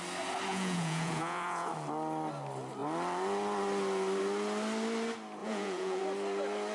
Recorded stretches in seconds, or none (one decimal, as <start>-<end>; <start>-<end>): 0.0-0.5; 1.7-5.4; 6.0-6.7